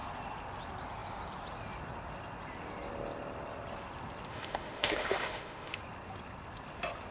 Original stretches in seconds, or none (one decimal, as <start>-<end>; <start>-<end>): 0.0-4.3; 5.8-7.1